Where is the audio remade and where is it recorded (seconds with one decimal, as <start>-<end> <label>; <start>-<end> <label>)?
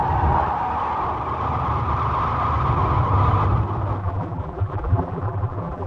0.0-4.0 recorded; 4.0-5.9 remade